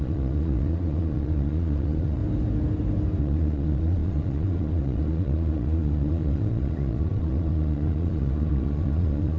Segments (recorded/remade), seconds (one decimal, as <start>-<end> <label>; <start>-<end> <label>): 0.0-2.2 remade; 2.2-3.2 recorded; 3.2-9.4 remade